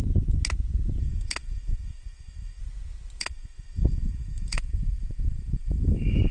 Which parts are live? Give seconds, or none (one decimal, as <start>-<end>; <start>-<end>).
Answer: 0.0-1.0; 2.6-3.2